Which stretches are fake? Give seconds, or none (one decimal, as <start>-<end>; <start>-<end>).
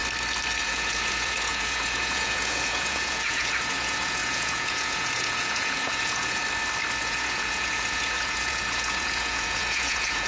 0.6-6.4; 7.0-10.3